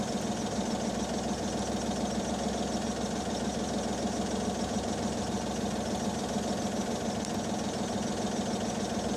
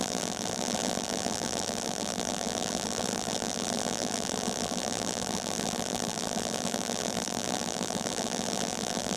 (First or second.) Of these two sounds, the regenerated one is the second